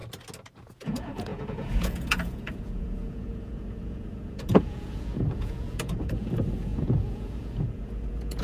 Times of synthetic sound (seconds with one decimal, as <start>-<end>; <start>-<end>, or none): 0.6-8.4